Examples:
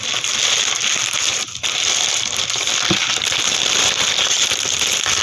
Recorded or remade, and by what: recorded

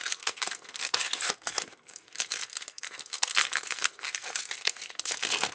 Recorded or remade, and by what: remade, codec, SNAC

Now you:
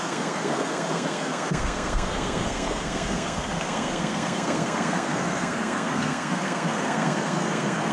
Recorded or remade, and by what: remade, codec, SNAC